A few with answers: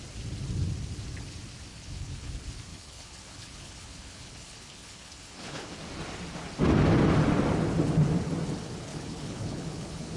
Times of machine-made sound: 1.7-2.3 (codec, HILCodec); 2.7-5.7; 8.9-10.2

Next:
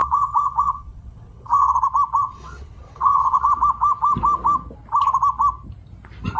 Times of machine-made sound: 0.0-1.8 (vocoder, WaveNeXt); 2.2-3.6

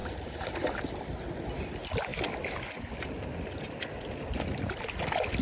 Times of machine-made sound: 0.0-1.0 (vocoder, BigVGAN v2)